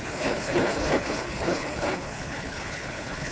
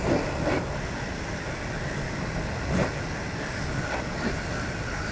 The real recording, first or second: second